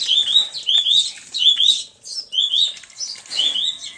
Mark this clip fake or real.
real